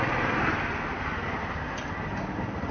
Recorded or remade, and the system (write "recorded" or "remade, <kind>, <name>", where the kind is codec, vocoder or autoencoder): recorded